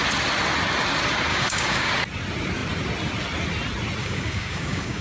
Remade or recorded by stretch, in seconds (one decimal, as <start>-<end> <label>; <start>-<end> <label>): 0.0-1.3 recorded; 1.3-1.9 remade; 1.9-4.0 recorded; 4.0-5.0 remade